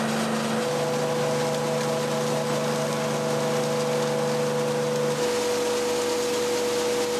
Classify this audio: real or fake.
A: real